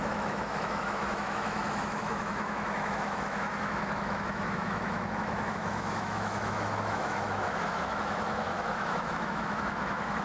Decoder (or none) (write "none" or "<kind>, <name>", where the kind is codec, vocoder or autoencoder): autoencoder, DAC-VAE